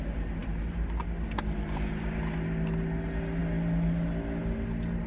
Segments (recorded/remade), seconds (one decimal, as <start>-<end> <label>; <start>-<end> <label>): 0.0-5.1 recorded